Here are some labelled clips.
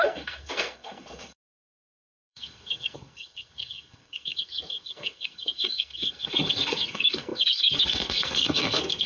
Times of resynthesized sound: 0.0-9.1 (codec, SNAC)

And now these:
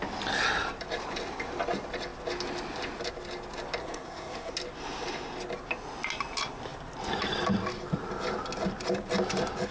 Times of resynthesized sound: 3.8-4.5 (codec, SNAC)